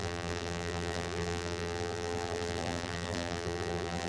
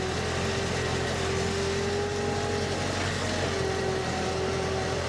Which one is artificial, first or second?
first